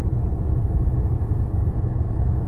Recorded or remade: remade